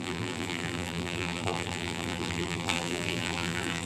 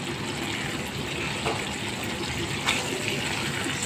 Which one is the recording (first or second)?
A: second